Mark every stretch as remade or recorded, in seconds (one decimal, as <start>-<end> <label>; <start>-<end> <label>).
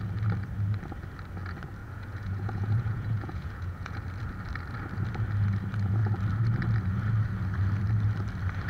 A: 0.0-1.8 recorded; 1.8-4.0 remade; 4.0-8.7 recorded